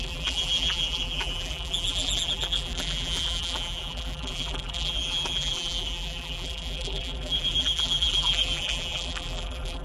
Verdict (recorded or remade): remade